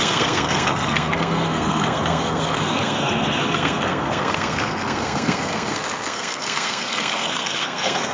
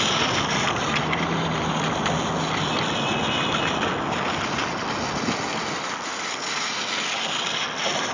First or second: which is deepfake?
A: first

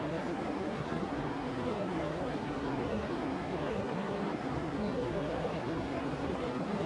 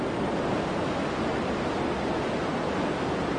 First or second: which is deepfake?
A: first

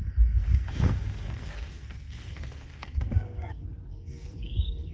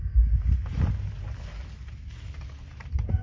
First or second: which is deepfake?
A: first